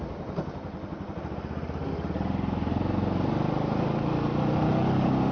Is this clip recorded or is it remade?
recorded